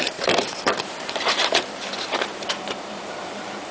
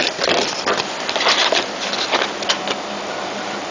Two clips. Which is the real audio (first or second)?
second